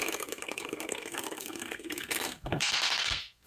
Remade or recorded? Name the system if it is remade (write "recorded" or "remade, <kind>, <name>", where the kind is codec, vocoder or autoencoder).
remade, codec, SNAC